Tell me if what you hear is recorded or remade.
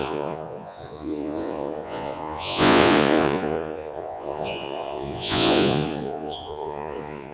remade